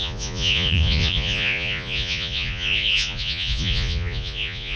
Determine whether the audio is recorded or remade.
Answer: remade